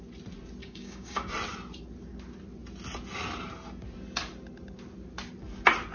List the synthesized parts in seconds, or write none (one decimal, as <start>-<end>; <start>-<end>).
0.6-1.3